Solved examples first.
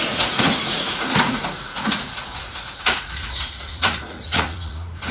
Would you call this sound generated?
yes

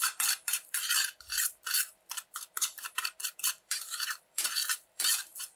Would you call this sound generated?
yes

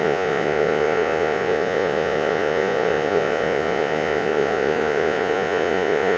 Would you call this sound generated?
yes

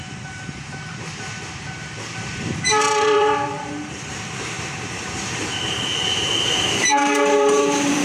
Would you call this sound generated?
yes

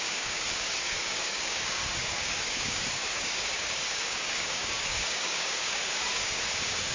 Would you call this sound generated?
yes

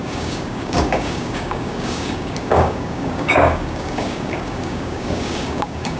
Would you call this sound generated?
yes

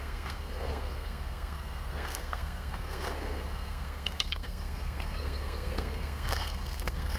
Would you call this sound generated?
yes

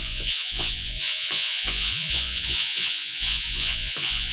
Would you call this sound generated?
yes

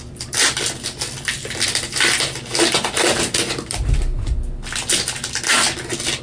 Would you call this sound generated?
no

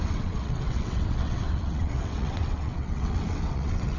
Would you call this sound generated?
yes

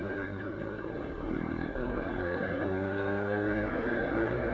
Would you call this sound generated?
yes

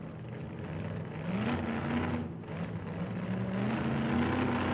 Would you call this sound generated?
no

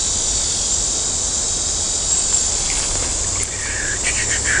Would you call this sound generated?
no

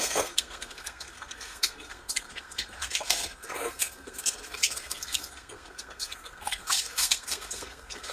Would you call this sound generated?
yes